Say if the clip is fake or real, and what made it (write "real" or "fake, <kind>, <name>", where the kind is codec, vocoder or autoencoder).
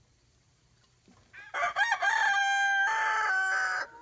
real